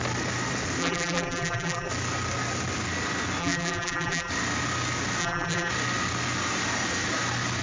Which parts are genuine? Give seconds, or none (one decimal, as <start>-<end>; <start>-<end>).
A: 0.0-0.8; 1.9-3.4; 4.3-5.2; 5.7-7.6